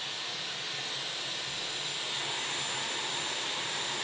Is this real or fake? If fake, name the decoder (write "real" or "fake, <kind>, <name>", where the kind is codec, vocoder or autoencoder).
real